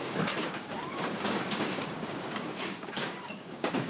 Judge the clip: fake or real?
fake